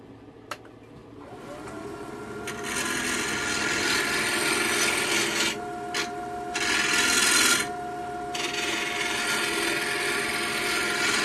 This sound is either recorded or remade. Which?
recorded